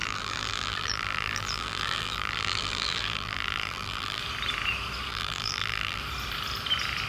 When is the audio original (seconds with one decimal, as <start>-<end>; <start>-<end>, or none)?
4.2-5.1; 6.0-7.1